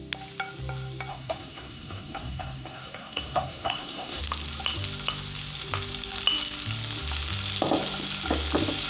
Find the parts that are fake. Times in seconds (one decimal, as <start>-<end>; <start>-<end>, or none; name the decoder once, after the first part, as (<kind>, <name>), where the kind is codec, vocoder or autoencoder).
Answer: 1.1-4.2 (codec, SNAC)